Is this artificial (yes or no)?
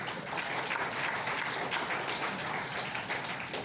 no